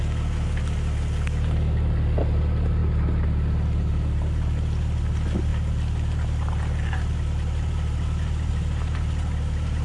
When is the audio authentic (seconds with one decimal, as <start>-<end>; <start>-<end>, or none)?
0.0-9.8